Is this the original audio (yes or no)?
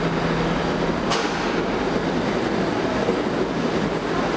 yes